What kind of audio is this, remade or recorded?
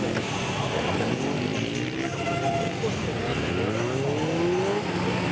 recorded